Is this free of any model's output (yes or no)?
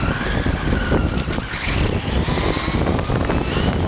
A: yes